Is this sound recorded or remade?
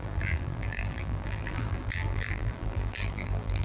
remade